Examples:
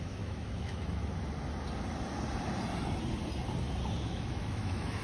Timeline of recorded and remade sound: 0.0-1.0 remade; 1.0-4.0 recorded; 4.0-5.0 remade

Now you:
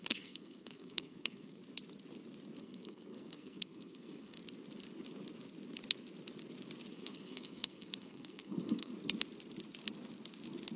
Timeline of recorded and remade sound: 0.0-1.6 remade; 1.6-2.6 recorded; 2.6-4.4 remade; 4.4-6.9 recorded; 6.9-8.9 remade; 8.9-10.8 recorded